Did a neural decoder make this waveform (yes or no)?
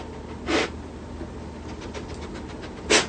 no